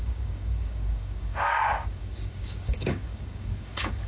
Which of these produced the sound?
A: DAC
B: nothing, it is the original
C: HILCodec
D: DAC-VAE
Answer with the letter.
A